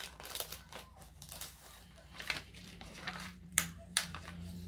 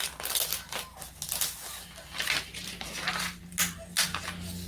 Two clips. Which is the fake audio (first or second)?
first